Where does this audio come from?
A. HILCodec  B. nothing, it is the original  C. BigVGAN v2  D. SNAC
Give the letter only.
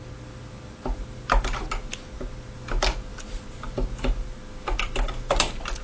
B